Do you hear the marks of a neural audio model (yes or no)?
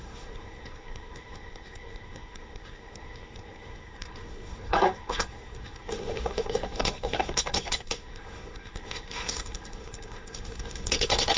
yes